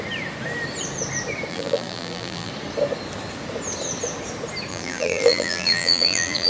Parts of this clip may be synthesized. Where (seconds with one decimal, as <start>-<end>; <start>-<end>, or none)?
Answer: 1.5-2.5; 4.7-6.5